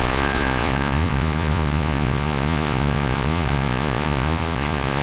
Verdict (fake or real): fake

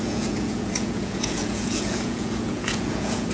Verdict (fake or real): fake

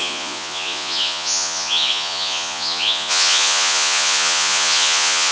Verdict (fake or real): fake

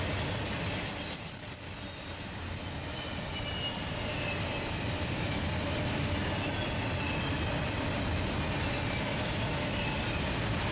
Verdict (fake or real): real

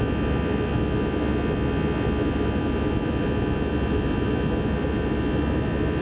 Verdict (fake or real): real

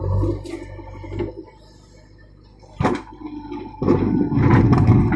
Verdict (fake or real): real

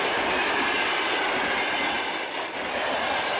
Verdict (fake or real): real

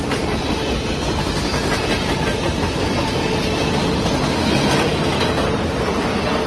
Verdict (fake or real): real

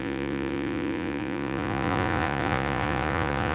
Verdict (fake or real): fake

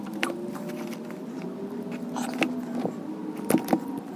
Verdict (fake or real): real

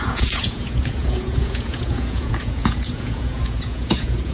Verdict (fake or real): fake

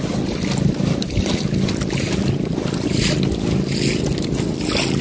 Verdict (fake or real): real